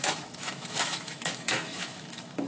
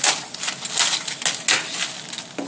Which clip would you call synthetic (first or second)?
first